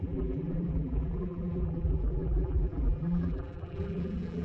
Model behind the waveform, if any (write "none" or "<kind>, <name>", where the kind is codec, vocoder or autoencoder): vocoder, BigVGAN v2